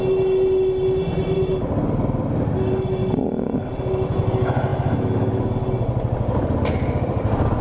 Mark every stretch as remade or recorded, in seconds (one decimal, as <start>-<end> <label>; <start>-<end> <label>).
0.0-7.6 recorded